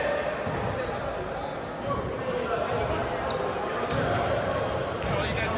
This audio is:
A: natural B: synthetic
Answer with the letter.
A